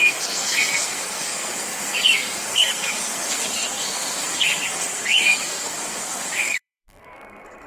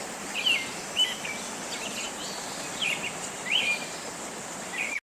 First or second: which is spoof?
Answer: first